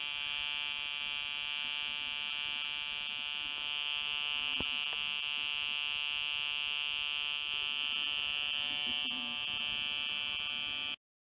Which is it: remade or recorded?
recorded